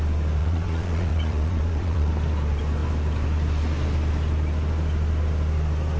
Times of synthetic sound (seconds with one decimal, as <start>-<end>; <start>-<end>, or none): 0.4-2.1